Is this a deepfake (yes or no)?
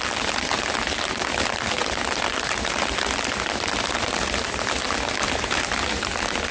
no